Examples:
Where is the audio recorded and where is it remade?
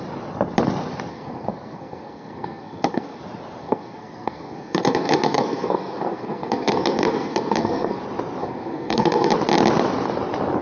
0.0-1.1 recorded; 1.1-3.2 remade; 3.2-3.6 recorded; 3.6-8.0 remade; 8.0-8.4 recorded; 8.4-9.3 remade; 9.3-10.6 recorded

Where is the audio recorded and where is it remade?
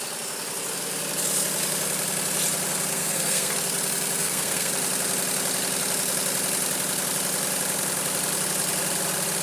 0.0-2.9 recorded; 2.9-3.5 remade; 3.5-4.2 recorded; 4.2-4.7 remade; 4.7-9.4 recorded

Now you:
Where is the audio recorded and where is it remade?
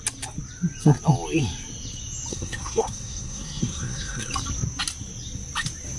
0.0-2.3 recorded; 2.3-4.3 remade; 4.3-6.0 recorded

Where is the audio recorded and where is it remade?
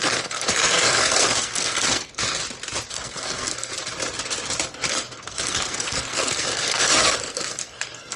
0.0-2.4 remade; 2.4-2.9 recorded; 2.9-3.7 remade; 3.7-4.9 recorded; 4.9-8.2 remade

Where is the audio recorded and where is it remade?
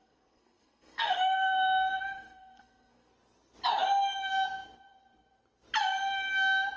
0.0-3.1 remade; 3.1-6.8 recorded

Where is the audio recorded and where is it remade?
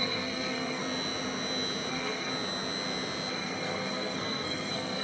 0.0-0.8 remade; 0.8-1.9 recorded; 1.9-2.3 remade; 2.3-3.3 recorded; 3.3-5.0 remade